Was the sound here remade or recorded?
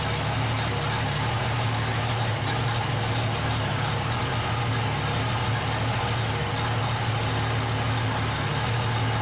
recorded